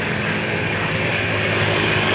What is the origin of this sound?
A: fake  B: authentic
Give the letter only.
A